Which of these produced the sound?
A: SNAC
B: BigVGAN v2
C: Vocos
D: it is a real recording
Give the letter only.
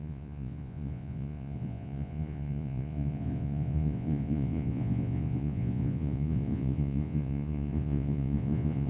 C